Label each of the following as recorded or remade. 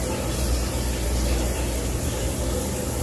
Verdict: recorded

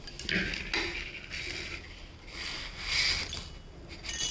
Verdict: recorded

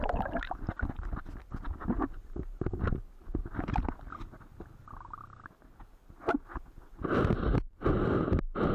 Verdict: recorded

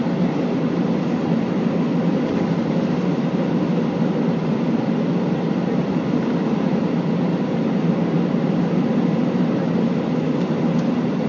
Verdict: recorded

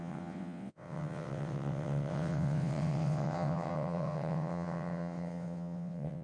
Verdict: remade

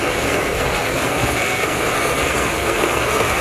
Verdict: remade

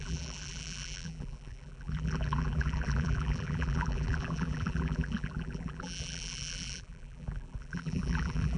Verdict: remade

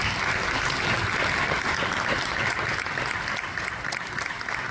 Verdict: recorded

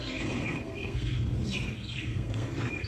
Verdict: remade